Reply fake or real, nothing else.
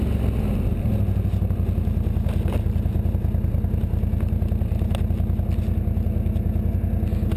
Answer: real